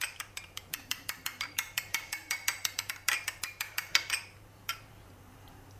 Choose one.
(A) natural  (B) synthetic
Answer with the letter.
B